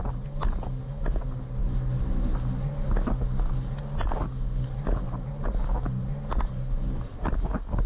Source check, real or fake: real